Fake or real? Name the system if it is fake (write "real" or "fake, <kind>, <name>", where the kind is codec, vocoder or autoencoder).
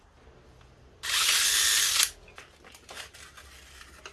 real